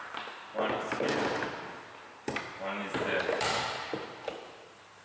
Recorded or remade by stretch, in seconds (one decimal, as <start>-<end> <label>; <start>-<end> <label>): 0.0-0.5 remade; 0.5-2.2 recorded; 2.2-5.0 remade